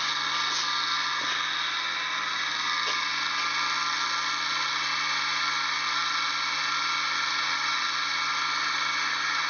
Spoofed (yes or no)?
no